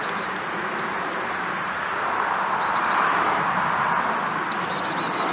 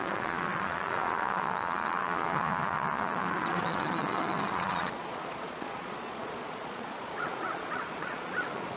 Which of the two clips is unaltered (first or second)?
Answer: first